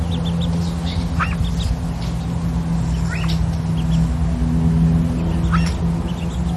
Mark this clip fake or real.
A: real